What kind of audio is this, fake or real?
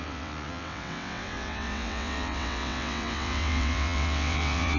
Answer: fake